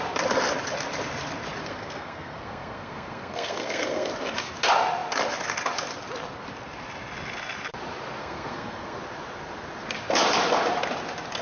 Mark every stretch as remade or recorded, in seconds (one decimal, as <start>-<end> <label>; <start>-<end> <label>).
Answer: 0.0-1.6 recorded; 1.6-4.1 remade; 4.1-8.2 recorded; 8.2-9.0 remade; 9.0-11.4 recorded